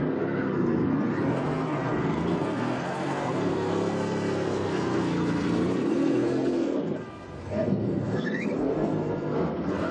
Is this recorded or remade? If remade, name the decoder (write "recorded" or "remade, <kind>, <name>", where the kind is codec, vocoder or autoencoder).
remade, codec, SNAC